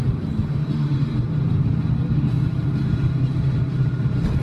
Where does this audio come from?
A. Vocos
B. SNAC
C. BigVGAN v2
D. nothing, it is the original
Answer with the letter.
C